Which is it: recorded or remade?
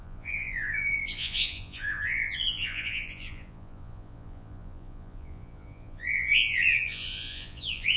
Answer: remade